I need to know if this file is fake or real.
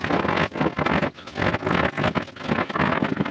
real